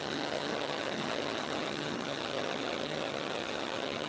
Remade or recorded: remade